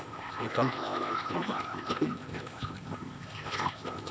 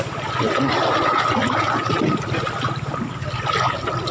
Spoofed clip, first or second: first